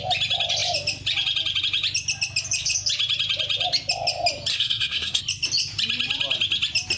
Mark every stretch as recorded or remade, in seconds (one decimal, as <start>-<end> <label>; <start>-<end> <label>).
0.0-4.5 recorded; 4.5-5.2 remade; 5.2-7.0 recorded